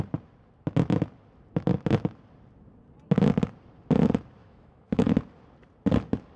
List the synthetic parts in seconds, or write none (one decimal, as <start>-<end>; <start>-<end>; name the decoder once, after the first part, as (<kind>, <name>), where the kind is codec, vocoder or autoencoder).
4.4-5.1 (autoencoder, DAC-VAE)

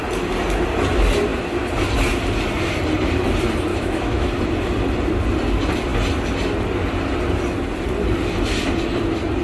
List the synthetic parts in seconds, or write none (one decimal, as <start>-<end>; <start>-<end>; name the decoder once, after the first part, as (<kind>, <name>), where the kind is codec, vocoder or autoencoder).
3.7-4.3 (autoencoder, DAC-VAE)

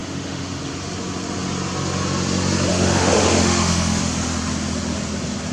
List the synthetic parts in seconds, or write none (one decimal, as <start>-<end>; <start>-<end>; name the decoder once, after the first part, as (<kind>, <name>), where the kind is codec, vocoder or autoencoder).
0.0-0.6 (autoencoder, DAC-VAE); 2.7-4.0

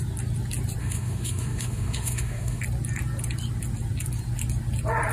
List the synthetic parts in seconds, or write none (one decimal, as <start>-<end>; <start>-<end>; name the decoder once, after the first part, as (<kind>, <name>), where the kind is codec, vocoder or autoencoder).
0.8-2.6 (autoencoder, DAC-VAE)

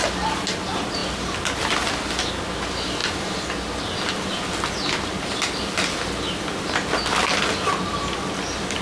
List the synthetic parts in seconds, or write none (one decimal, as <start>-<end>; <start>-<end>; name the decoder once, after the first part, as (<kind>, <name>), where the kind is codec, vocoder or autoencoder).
none